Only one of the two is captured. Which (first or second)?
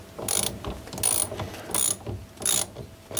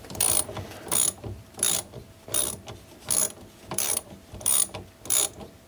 first